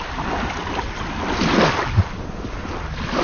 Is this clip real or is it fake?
real